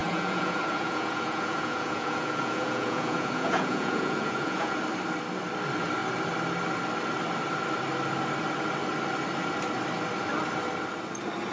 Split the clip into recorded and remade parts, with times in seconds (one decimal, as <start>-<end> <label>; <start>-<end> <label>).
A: 0.0-4.8 remade; 4.8-11.5 recorded